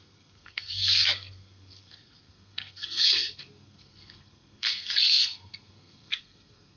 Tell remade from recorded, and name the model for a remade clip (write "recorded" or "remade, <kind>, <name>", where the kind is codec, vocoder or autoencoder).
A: remade, codec, SNAC